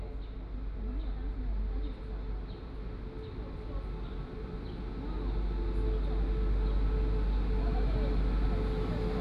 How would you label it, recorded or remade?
recorded